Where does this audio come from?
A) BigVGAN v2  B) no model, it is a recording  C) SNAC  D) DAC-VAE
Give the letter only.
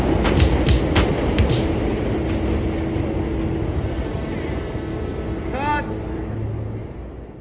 B